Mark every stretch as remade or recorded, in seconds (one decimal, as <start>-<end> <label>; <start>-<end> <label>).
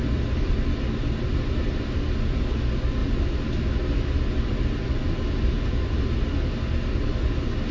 0.0-7.7 recorded